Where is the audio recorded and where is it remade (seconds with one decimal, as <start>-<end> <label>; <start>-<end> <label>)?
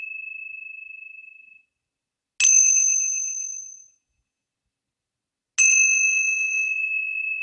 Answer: 0.0-3.3 recorded; 3.3-4.5 remade; 4.5-6.5 recorded; 6.5-7.4 remade